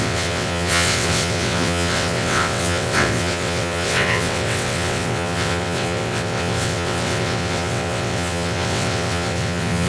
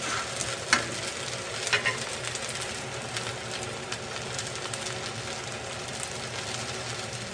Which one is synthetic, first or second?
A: first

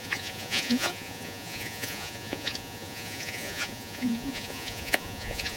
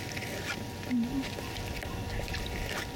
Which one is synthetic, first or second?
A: first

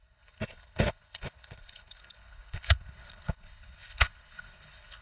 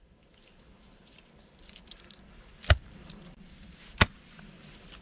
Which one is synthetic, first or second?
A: first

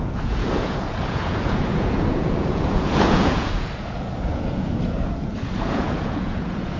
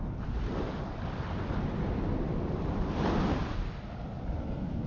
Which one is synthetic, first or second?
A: first